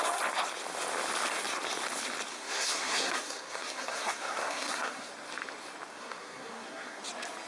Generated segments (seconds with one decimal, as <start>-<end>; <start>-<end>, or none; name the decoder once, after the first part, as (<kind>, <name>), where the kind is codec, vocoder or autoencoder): 2.3-5.1 (codec, SNAC); 5.9-7.0